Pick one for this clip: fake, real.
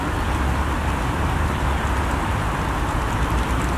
real